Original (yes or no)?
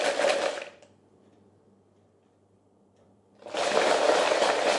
no